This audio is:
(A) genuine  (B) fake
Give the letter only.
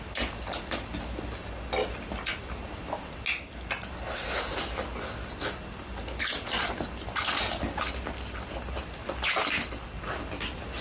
A